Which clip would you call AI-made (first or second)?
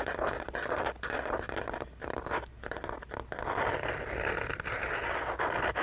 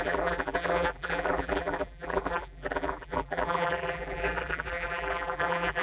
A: second